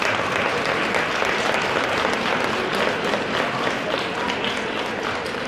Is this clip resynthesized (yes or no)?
no